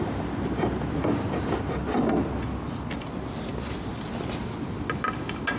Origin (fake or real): real